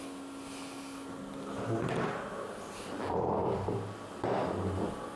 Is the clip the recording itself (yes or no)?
yes